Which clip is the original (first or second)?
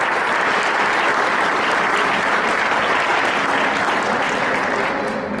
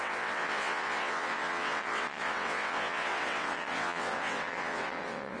first